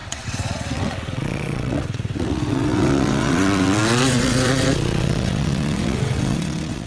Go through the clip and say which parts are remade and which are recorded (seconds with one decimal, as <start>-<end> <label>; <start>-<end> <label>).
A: 0.0-6.9 remade